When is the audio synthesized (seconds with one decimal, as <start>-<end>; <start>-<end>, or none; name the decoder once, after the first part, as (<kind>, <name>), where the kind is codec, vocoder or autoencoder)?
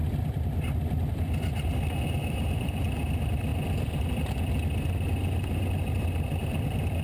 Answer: 0.0-1.2 (vocoder, BigVGAN v2); 2.2-3.0